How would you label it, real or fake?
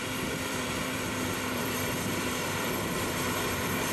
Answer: fake